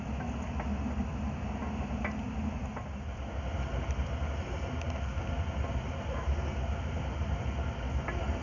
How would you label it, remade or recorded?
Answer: recorded